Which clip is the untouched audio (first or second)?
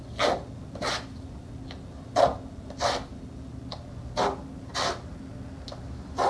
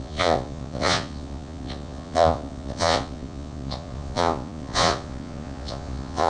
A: first